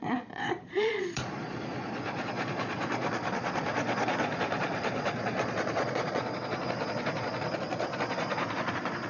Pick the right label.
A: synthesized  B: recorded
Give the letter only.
A